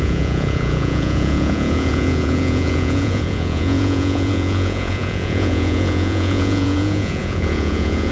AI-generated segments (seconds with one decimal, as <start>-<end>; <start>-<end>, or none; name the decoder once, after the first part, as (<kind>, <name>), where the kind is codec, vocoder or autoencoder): 0.0-8.1 (vocoder, Vocos)